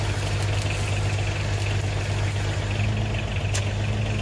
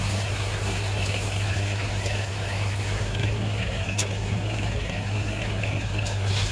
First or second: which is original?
first